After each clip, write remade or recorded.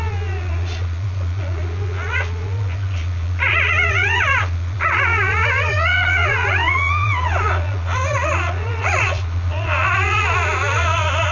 remade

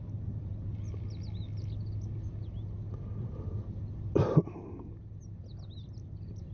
recorded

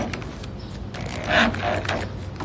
recorded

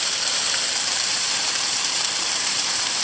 remade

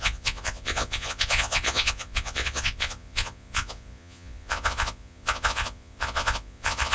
remade